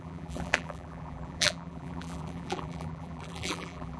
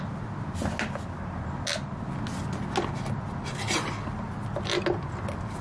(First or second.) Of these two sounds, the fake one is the first